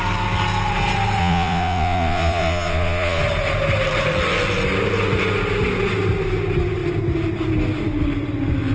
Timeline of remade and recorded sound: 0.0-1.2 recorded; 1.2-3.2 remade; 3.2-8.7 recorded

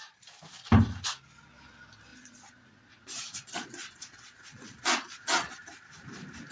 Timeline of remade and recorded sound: 0.0-2.1 recorded; 2.1-5.5 remade; 5.5-6.5 recorded

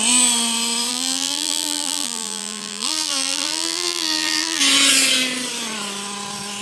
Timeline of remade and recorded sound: 0.0-0.9 recorded; 0.9-4.6 remade; 4.6-6.6 recorded

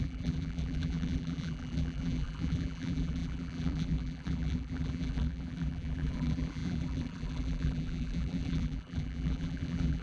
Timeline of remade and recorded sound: 0.0-10.0 remade